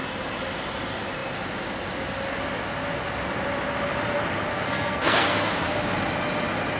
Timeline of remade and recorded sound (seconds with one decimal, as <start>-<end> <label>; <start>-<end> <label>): 0.0-4.5 recorded; 4.5-5.5 remade; 5.5-6.8 recorded